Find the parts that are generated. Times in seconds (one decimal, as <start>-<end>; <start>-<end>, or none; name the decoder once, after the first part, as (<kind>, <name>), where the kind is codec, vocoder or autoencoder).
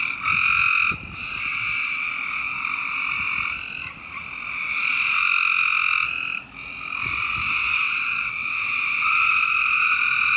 1.4-2.1 (vocoder, WaveNeXt); 7.4-9.3